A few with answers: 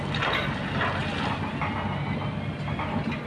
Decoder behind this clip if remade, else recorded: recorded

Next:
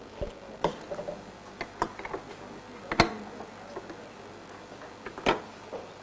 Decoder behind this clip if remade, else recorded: recorded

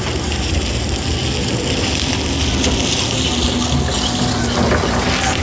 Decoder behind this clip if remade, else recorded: recorded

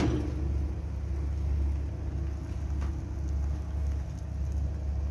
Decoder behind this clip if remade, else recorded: recorded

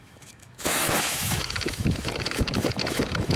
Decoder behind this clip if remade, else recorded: remade, autoencoder, DAC-VAE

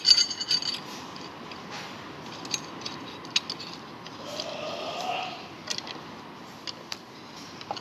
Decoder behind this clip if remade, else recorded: recorded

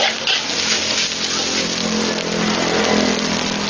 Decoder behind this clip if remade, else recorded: recorded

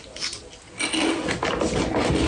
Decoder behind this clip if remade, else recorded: recorded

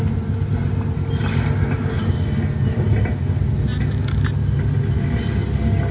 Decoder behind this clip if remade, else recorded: recorded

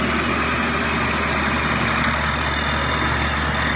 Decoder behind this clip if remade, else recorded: recorded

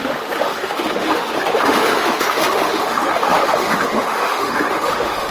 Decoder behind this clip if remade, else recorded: remade, autoencoder, DAC-VAE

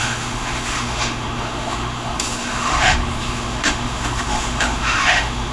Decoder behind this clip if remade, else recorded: remade, autoencoder, DAC-VAE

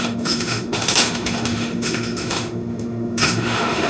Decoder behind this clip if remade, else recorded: remade, autoencoder, DAC-VAE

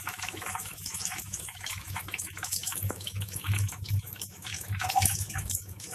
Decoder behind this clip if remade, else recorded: remade, autoencoder, DAC-VAE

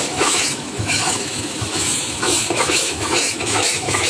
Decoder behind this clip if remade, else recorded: remade, autoencoder, DAC-VAE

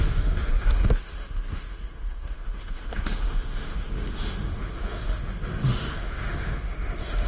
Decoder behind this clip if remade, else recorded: remade, autoencoder, DAC-VAE